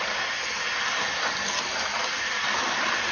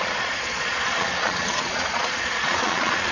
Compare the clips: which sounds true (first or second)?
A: first